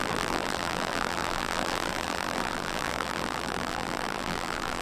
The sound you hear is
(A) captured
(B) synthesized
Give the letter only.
B